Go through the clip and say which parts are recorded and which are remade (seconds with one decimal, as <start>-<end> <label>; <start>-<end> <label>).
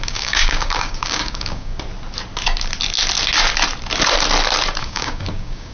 0.0-1.7 remade; 1.7-4.8 recorded; 4.8-5.7 remade